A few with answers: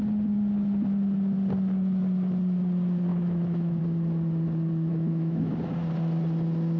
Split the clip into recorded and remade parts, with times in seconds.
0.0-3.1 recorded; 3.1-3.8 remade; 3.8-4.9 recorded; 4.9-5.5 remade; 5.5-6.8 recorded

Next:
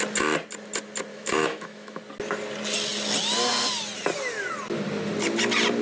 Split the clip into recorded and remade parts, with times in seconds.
0.0-1.1 recorded; 1.1-2.0 remade; 2.0-5.8 recorded

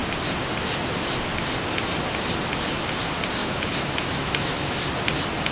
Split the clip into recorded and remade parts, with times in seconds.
0.0-3.4 recorded; 3.4-4.8 remade; 4.8-5.5 recorded

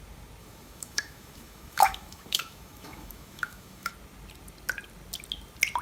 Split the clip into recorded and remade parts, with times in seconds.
0.0-0.4 recorded; 0.4-3.9 remade; 3.9-5.8 recorded

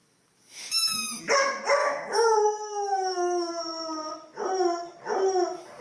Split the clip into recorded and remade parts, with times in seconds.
0.0-1.2 remade; 1.2-1.8 recorded; 1.8-3.5 remade; 3.5-5.8 recorded

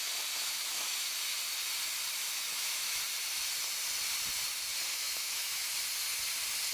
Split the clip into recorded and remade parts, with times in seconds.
0.0-0.4 recorded; 0.4-1.1 remade; 1.1-2.3 recorded; 2.3-3.0 remade; 3.0-4.9 recorded; 4.9-5.7 remade; 5.7-6.7 recorded